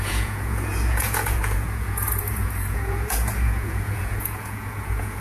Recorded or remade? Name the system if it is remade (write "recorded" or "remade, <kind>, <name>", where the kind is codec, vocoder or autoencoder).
remade, vocoder, Vocos